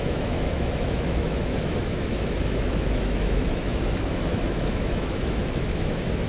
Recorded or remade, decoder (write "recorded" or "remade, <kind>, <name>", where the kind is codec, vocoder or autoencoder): remade, autoencoder, DAC-VAE